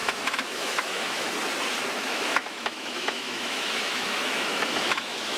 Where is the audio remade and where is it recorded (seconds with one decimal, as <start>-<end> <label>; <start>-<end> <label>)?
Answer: 0.0-1.3 remade; 1.3-2.0 recorded; 2.0-5.4 remade